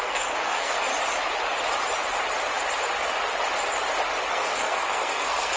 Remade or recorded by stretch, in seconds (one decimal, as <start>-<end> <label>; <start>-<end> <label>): 0.0-0.9 remade; 0.9-4.3 recorded; 4.3-5.6 remade